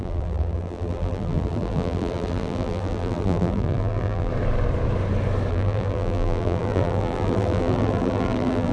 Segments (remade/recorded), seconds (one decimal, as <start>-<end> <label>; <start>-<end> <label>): 0.0-4.3 remade; 4.3-5.5 recorded; 5.5-8.7 remade